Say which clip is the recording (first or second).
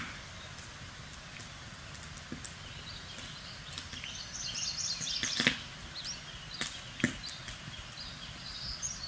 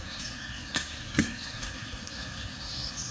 first